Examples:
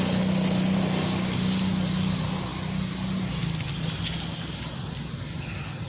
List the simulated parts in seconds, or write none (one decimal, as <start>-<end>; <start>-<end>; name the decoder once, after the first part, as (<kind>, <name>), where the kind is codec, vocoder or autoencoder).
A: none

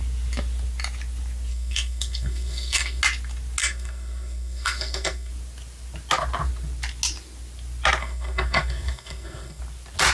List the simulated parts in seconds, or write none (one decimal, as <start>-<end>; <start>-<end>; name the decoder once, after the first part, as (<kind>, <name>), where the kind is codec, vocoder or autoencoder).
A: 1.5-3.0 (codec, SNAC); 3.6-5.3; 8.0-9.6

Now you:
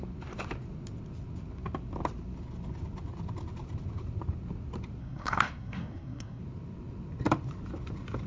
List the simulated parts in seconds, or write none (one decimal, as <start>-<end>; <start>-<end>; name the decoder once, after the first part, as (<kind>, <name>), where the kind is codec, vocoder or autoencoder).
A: 5.0-6.4 (codec, SNAC)

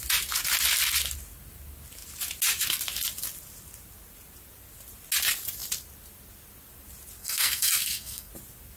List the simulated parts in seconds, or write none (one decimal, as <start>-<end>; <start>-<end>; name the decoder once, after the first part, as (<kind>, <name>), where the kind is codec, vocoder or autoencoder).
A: 7.2-8.3 (codec, SNAC)

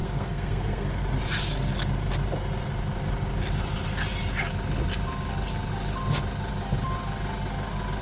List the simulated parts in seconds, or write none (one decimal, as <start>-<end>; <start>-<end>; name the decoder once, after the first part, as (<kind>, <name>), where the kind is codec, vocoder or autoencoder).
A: 0.0-1.0 (codec, SNAC)

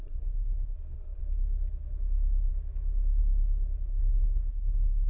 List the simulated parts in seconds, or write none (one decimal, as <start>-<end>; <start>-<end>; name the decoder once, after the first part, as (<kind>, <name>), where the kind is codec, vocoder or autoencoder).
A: 0.0-1.2 (codec, SNAC); 3.9-5.1